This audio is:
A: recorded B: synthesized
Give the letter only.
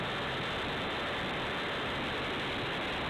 A